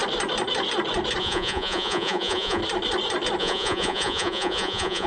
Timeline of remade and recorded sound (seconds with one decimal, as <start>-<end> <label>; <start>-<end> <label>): 0.0-1.2 recorded; 1.2-2.6 remade; 2.6-3.4 recorded; 3.4-5.1 remade